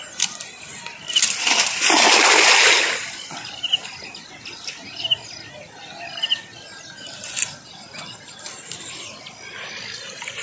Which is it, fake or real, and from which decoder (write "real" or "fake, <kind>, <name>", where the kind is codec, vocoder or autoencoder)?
fake, vocoder, BigVGAN v2